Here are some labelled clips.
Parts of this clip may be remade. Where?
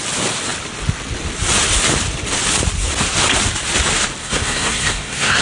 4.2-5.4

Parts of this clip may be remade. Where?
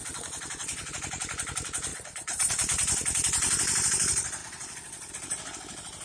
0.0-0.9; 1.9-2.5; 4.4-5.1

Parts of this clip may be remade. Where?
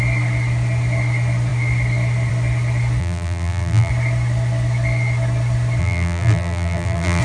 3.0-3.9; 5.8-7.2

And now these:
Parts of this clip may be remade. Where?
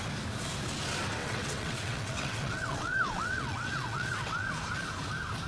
1.2-4.5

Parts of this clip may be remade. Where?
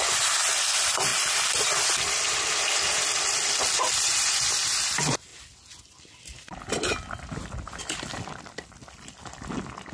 1.1-4.8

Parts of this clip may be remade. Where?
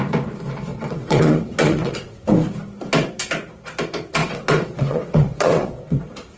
0.7-2.3; 4.2-6.0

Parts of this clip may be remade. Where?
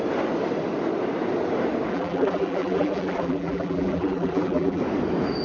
1.9-4.8